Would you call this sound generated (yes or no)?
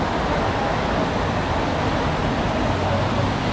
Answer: no